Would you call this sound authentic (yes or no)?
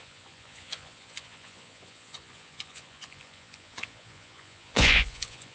no